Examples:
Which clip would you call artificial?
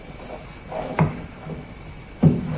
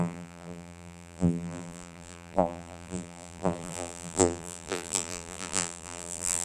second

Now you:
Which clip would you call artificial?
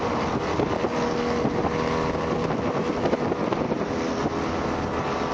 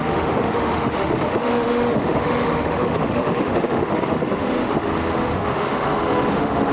second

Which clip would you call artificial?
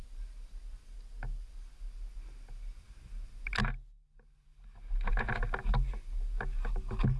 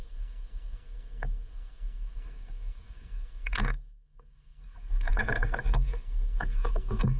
second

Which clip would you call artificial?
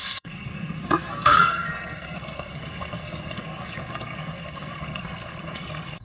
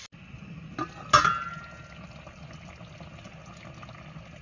first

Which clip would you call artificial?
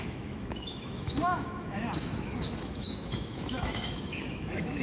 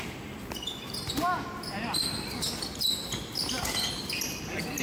first